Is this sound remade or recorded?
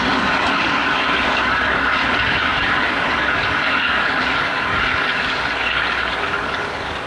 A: remade